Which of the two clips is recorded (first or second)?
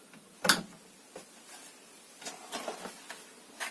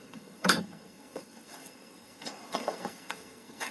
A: first